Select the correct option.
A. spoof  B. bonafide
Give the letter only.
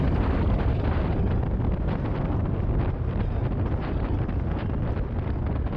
B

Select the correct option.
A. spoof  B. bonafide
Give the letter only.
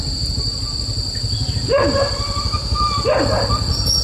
A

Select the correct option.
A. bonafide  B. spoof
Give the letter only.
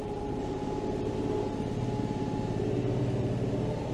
B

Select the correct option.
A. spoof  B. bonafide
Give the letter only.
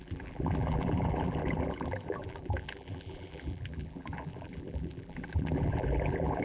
A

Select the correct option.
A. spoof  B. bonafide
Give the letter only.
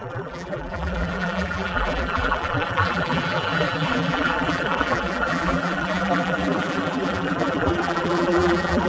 A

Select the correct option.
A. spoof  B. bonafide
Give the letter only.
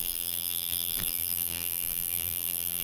A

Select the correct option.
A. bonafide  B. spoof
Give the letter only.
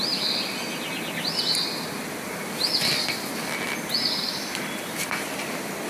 A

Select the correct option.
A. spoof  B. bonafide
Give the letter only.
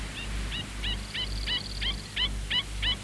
A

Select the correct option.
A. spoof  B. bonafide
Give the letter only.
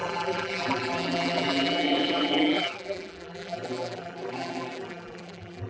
A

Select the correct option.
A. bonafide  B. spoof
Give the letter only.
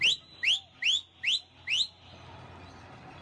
A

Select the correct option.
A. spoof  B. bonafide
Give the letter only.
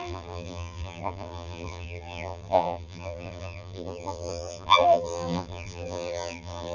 A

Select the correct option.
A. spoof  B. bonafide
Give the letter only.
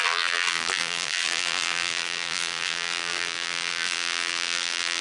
A